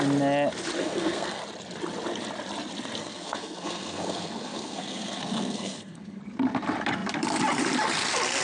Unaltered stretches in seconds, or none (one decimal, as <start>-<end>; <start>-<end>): 0.0-0.8; 1.4-3.0; 6.2-8.4